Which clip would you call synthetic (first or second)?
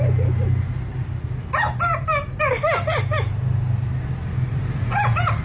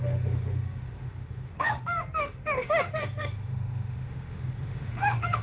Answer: second